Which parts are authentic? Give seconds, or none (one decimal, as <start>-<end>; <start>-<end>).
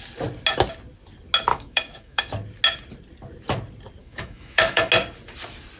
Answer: 0.0-1.5; 2.3-4.0; 4.9-5.8